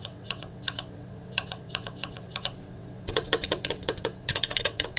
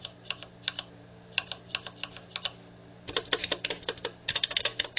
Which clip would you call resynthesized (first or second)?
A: first